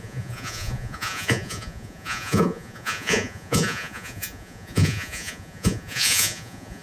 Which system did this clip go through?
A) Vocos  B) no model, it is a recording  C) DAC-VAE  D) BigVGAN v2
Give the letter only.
A